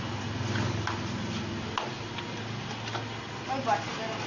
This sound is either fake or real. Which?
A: real